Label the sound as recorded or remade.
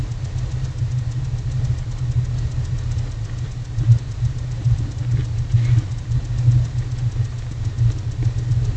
recorded